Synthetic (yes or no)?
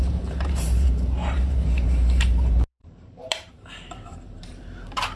yes